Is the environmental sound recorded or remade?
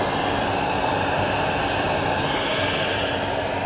recorded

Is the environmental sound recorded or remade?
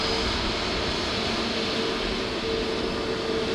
recorded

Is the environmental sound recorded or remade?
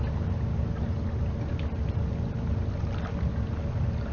recorded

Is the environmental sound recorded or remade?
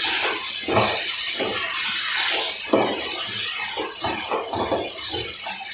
recorded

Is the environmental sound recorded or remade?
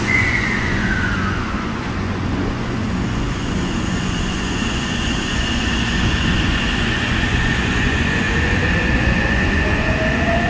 remade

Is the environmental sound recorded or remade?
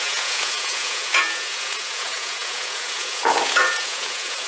remade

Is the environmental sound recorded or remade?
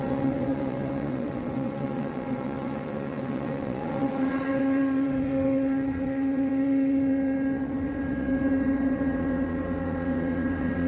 remade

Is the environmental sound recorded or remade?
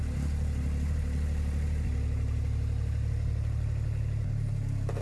recorded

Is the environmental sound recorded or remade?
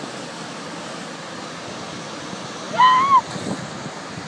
recorded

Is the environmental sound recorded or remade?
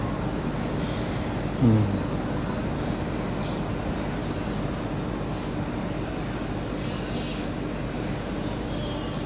recorded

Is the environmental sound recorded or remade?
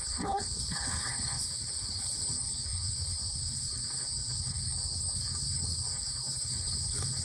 remade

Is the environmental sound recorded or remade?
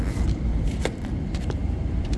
remade